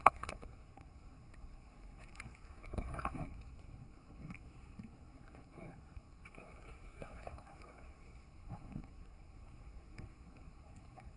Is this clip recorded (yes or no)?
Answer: no